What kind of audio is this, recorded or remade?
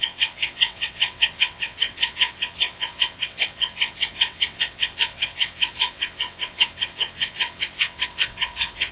remade